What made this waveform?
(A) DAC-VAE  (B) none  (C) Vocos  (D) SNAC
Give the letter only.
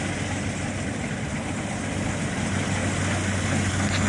B